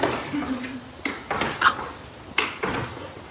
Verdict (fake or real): real